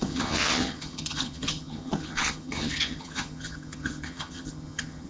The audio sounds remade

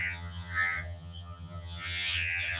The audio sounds remade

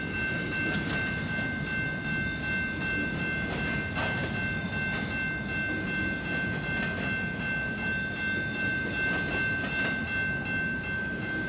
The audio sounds recorded